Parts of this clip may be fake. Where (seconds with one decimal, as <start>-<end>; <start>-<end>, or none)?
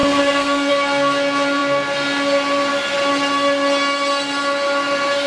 0.0-0.7